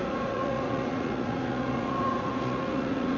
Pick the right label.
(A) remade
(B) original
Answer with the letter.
A